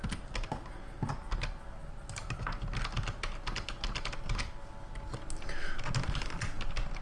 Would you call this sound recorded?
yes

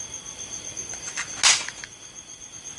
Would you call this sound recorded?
yes